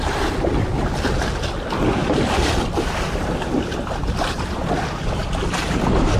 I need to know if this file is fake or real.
real